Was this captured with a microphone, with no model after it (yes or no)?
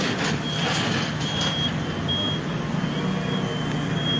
yes